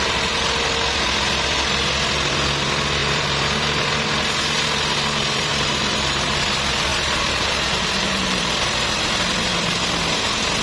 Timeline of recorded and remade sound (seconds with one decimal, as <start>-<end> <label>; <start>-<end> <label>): 0.0-3.0 recorded; 3.0-3.9 remade; 3.9-5.5 recorded; 5.5-6.4 remade; 6.4-6.9 recorded; 6.9-8.5 remade; 8.5-10.6 recorded